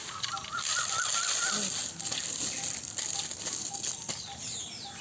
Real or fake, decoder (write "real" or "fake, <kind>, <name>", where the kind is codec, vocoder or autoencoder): real